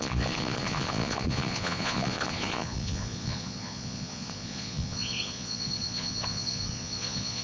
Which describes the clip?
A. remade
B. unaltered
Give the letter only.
A